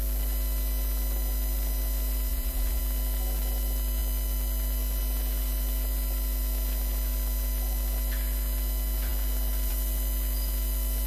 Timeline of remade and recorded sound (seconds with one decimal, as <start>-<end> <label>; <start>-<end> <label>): 0.0-2.3 recorded; 2.3-2.8 remade; 2.8-11.1 recorded